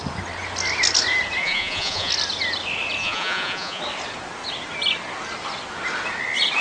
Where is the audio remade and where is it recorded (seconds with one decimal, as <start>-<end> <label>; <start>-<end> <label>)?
0.0-1.4 recorded; 1.4-2.1 remade; 2.1-3.0 recorded; 3.0-3.8 remade; 3.8-6.6 recorded